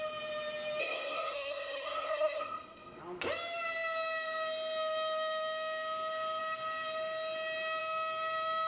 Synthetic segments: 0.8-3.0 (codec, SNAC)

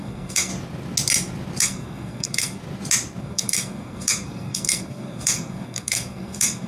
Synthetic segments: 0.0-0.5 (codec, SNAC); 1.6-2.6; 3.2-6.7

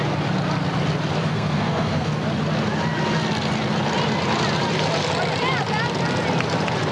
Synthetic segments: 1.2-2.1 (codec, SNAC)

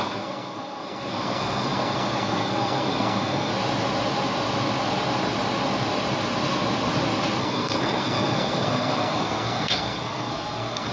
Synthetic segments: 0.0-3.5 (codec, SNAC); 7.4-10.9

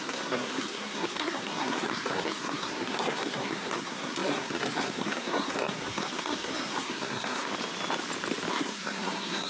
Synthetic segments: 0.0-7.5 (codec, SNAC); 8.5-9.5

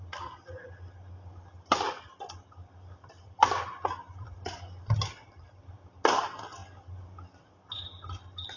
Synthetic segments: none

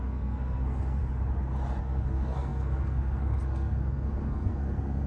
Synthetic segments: 0.0-1.0 (codec, SNAC); 1.8-5.1

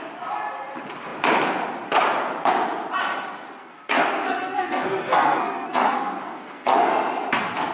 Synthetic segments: 3.6-6.9 (codec, SNAC)